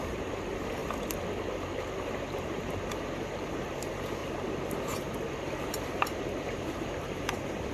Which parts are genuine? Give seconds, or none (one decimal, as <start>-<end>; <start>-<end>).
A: 0.8-1.5; 4.2-4.8